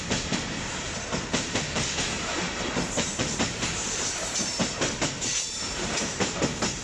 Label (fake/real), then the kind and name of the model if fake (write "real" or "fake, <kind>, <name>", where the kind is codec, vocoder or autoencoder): fake, vocoder, BigVGAN v2